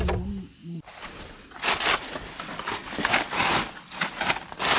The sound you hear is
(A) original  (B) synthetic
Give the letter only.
A